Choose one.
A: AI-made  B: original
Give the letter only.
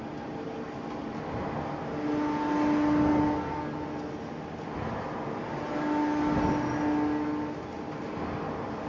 B